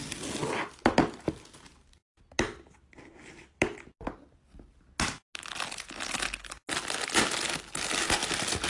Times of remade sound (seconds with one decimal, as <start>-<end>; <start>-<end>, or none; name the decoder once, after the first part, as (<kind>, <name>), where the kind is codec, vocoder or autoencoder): none